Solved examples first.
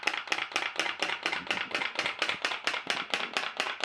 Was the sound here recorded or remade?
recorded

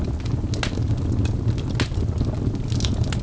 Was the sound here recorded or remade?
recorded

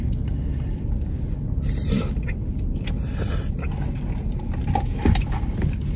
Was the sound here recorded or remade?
recorded